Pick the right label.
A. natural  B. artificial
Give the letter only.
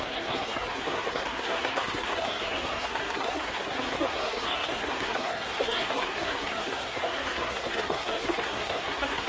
B